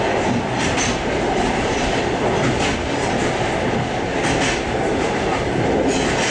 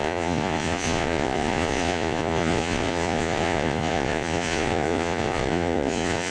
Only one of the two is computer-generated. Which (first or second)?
second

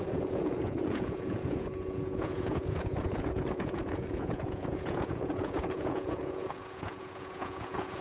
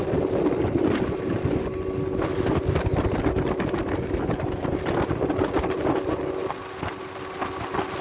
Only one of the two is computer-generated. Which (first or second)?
first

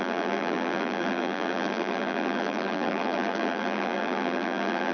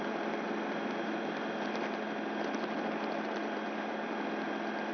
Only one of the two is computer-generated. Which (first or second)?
first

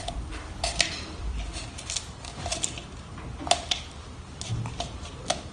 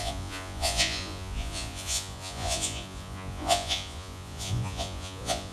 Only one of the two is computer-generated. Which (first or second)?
second